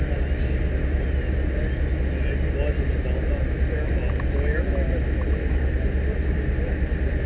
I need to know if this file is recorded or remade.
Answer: recorded